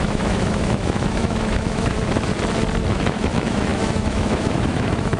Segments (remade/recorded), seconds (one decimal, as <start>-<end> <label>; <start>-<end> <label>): 0.0-2.3 remade; 2.3-2.9 recorded; 2.9-5.2 remade

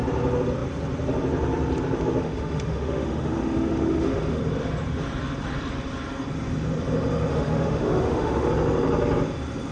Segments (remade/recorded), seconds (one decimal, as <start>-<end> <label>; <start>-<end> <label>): 0.0-2.2 recorded; 2.2-4.4 remade; 4.4-7.3 recorded; 7.3-8.5 remade; 8.5-9.7 recorded

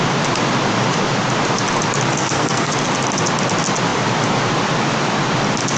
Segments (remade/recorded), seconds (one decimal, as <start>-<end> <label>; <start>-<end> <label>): 0.0-2.1 recorded; 2.1-2.7 remade; 2.7-5.8 recorded

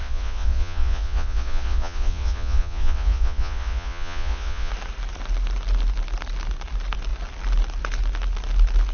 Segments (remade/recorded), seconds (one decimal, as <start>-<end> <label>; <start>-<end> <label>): 0.0-4.7 remade; 4.7-8.9 recorded

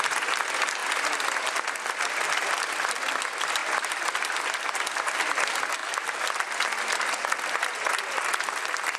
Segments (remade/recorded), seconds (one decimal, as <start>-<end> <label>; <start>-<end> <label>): 0.0-9.0 recorded

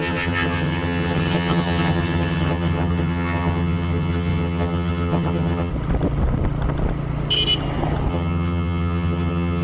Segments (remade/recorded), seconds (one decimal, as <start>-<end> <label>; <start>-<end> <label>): 0.0-5.7 remade; 5.7-8.1 recorded; 8.1-9.6 remade